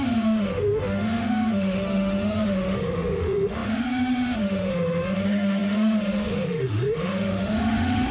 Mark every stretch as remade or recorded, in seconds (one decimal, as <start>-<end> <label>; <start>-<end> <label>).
0.0-8.1 remade